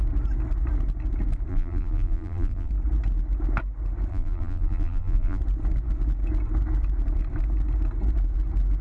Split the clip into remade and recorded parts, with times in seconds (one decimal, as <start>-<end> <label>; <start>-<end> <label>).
0.0-1.5 recorded; 1.5-2.7 remade; 2.7-4.1 recorded; 4.1-5.4 remade; 5.4-8.8 recorded